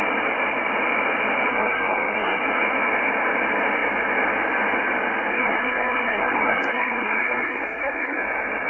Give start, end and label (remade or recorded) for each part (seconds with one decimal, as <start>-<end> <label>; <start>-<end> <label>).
0.0-1.5 recorded; 1.5-2.4 remade; 2.4-5.3 recorded; 5.3-8.2 remade; 8.2-8.7 recorded